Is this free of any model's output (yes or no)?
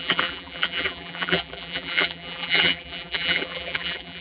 no